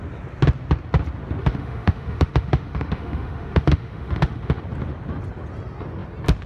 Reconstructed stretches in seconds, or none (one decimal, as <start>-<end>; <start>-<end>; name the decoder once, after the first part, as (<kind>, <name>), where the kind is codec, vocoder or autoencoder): 1.4-4.6 (autoencoder, DAC-VAE)